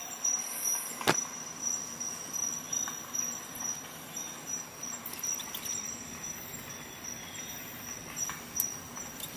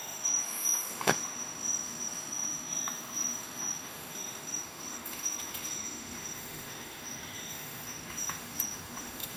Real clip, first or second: first